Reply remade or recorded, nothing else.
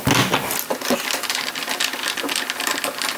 recorded